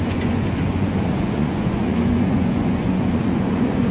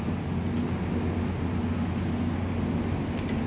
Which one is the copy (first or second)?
first